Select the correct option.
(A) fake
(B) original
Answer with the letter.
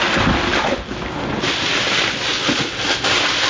B